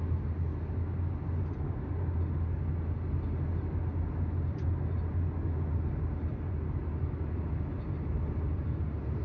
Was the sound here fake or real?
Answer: real